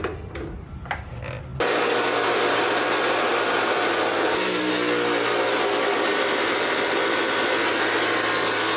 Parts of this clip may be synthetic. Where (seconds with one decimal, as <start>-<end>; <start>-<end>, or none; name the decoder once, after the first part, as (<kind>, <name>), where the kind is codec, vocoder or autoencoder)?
none